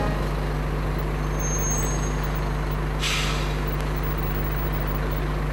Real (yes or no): yes